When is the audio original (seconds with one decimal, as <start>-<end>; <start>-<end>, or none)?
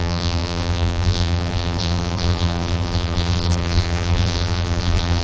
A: none